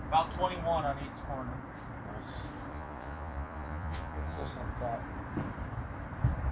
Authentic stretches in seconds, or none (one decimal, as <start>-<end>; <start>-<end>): 0.0-2.7; 4.5-6.5